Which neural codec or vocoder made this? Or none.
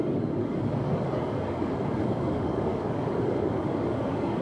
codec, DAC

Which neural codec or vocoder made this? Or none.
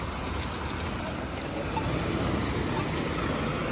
none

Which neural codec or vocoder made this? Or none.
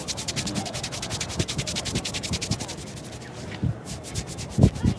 none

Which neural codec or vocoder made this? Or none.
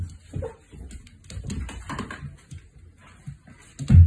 none